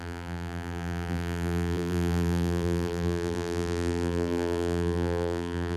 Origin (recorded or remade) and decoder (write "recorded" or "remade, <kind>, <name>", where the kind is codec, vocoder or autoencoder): remade, vocoder, BigVGAN v2